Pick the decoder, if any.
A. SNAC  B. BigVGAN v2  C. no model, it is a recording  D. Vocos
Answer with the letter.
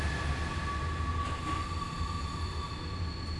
C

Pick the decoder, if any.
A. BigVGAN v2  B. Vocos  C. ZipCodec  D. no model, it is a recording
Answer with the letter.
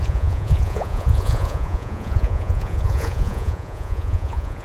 B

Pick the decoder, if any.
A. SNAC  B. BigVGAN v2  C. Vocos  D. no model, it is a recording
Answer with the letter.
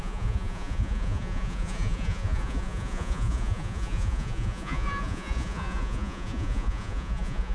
C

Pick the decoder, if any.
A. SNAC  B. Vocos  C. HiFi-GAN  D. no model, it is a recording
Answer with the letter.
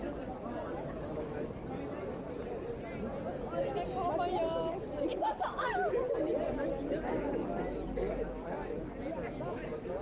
D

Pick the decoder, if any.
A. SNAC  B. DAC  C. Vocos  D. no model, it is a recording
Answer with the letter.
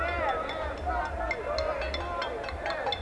D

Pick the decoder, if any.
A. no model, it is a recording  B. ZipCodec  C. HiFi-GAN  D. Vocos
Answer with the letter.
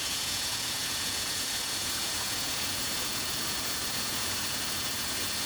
D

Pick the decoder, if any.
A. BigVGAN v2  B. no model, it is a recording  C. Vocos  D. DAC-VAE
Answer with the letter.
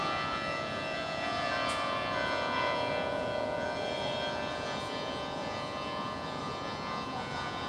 C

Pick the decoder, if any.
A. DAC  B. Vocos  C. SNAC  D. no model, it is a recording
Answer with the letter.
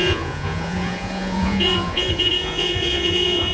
B